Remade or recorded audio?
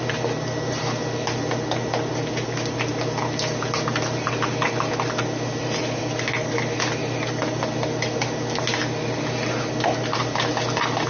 recorded